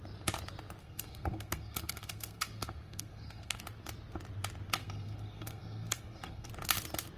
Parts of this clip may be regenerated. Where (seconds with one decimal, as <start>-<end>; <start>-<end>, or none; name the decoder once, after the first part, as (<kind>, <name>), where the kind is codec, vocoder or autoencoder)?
0.8-3.6 (codec, SNAC); 4.8-6.5